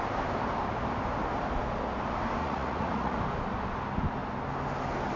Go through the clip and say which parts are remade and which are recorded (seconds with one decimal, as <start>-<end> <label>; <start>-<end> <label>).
0.0-2.4 recorded; 2.4-3.2 remade; 3.2-5.2 recorded